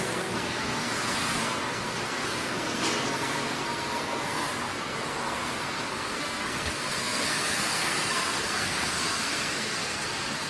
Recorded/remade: remade